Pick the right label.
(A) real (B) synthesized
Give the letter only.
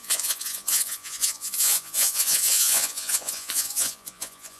B